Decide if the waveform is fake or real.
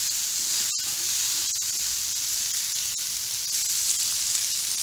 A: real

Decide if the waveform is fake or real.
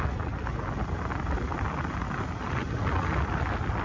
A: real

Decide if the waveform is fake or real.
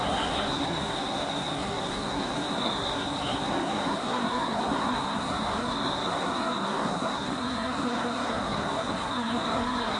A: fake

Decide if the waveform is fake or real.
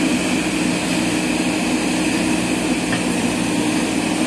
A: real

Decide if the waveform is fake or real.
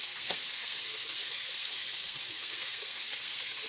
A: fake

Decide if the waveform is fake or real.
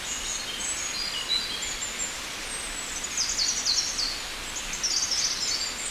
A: real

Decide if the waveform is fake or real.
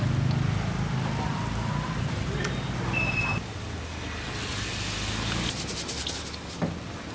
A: real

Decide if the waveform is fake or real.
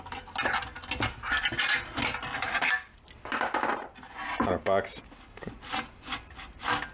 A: real